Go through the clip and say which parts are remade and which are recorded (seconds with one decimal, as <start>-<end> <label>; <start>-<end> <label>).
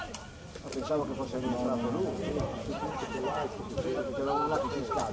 0.0-5.1 recorded